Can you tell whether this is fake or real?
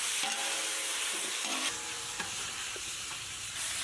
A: fake